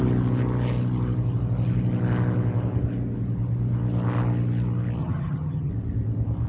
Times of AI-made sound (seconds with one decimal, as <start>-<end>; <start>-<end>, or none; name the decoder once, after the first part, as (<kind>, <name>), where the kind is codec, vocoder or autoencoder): 5.0-5.7 (vocoder, HiFi-GAN)